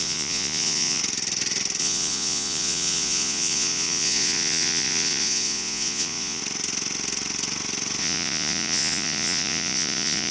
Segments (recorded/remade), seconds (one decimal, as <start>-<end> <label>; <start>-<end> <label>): 0.0-1.0 remade; 1.0-1.8 recorded; 1.8-6.4 remade; 6.4-8.0 recorded; 8.0-10.3 remade